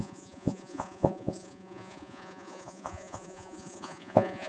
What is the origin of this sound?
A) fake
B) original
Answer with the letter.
A